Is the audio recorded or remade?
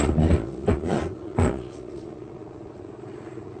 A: remade